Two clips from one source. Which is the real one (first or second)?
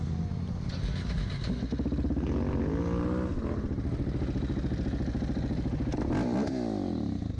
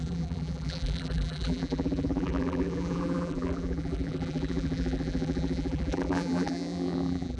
first